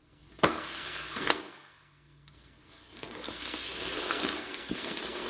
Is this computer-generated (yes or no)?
yes